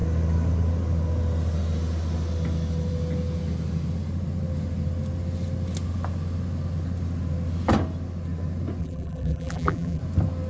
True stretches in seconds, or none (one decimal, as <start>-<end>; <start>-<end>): 0.0-8.8; 10.0-10.5